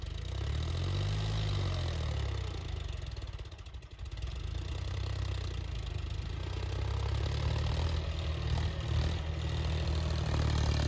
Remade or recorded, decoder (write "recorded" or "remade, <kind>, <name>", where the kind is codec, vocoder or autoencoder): recorded